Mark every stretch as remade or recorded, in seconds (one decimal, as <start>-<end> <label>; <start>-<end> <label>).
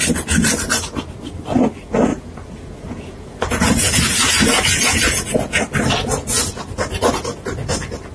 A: 0.0-2.1 recorded; 2.1-5.6 remade; 5.6-8.1 recorded